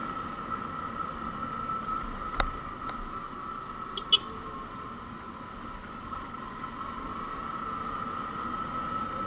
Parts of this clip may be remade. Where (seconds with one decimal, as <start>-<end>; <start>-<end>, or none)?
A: none

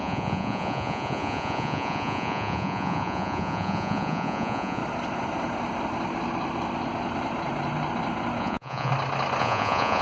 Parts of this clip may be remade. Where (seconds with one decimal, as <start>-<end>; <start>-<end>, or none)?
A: 0.0-4.8; 8.4-8.9; 9.4-10.0